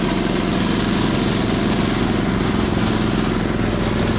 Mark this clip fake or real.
real